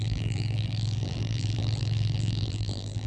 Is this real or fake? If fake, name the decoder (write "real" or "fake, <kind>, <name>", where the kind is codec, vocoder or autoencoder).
fake, vocoder, BigVGAN v2